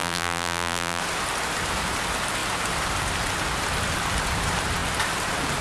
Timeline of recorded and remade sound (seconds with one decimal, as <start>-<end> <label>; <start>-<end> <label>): 0.0-1.0 remade; 1.0-5.6 recorded